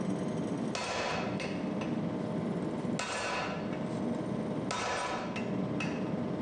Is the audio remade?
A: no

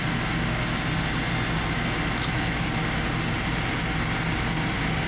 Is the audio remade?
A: no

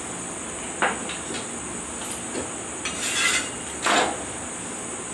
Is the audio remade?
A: no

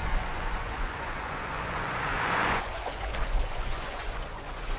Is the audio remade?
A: yes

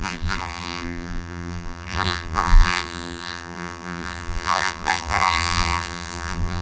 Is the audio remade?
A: yes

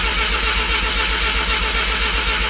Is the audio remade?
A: no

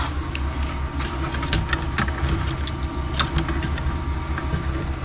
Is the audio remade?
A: no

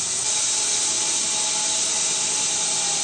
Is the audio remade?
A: no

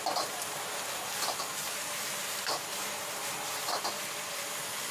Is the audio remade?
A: no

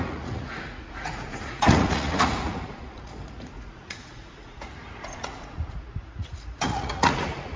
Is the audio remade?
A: yes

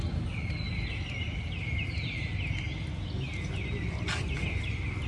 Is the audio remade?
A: no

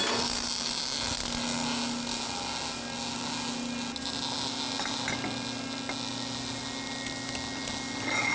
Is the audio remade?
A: no